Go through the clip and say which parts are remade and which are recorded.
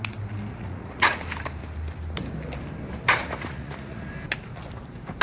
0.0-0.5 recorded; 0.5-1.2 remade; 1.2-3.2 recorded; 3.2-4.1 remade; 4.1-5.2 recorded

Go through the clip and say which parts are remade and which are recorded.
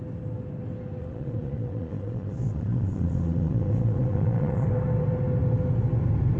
0.0-1.0 recorded; 1.0-4.7 remade; 4.7-6.4 recorded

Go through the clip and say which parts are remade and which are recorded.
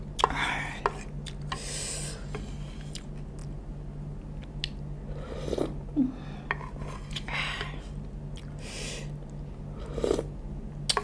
0.0-11.0 recorded